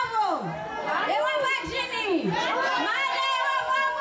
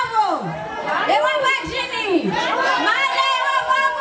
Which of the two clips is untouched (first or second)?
first